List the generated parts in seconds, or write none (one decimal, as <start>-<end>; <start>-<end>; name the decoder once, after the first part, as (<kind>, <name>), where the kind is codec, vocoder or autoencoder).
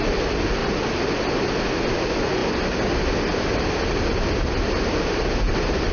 none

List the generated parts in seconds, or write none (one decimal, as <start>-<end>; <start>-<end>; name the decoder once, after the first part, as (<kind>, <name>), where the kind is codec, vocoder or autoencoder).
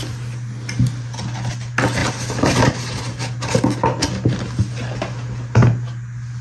none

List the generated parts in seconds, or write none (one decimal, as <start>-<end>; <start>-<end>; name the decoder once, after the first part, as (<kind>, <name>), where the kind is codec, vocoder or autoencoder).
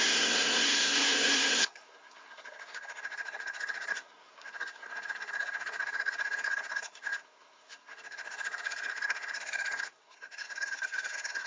0.0-11.5 (codec, SNAC)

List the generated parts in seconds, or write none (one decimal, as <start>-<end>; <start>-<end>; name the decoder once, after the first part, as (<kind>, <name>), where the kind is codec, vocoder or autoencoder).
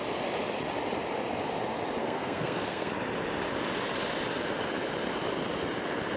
2.0-2.9 (codec, SNAC)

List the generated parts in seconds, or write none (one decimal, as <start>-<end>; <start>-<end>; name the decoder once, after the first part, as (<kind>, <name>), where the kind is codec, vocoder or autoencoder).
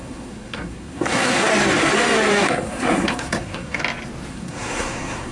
0.0-1.5 (codec, SNAC); 2.3-3.8; 4.3-5.3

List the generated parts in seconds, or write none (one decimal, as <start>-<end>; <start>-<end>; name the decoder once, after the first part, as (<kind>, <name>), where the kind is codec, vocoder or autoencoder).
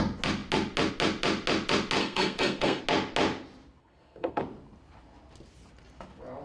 2.0-2.8 (codec, SNAC); 3.8-4.4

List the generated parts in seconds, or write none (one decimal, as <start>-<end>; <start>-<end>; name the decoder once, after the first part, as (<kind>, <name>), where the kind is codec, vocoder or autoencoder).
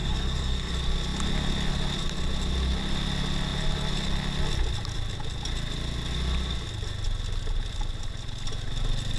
0.0-0.7 (codec, SNAC)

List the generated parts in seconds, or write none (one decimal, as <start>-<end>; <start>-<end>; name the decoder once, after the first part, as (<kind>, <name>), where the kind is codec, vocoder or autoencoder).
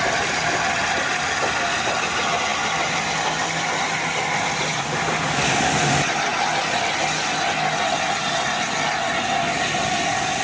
none